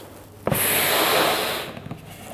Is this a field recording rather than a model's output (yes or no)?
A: yes